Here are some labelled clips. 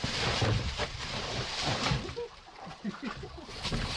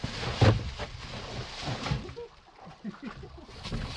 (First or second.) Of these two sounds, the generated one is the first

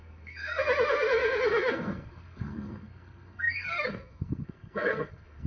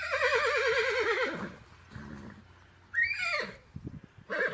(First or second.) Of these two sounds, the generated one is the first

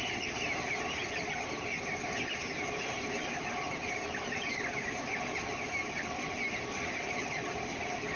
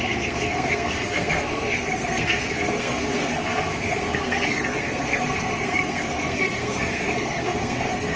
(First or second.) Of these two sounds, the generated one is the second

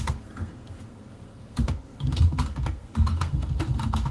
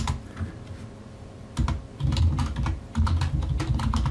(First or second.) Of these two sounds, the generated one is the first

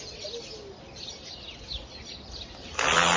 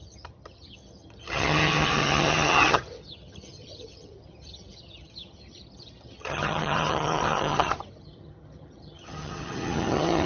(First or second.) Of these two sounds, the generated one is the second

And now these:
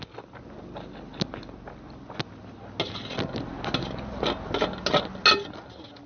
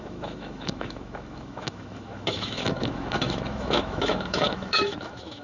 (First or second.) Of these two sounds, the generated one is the second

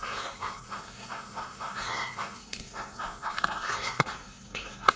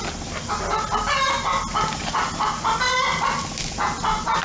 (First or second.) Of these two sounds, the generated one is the first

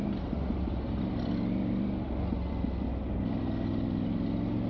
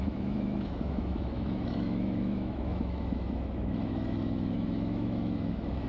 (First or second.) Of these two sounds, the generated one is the second